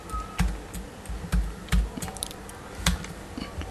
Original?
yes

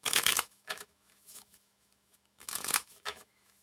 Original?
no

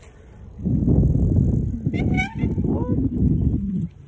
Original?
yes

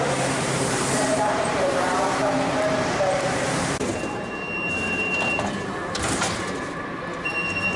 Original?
no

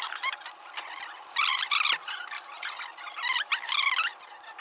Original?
yes